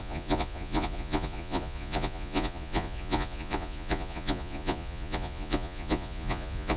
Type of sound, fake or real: fake